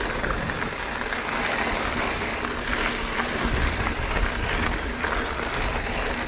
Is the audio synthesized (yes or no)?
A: no